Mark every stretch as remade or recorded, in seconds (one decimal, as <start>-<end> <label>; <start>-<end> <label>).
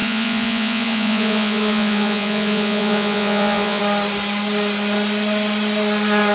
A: 0.0-3.8 remade; 3.8-6.3 recorded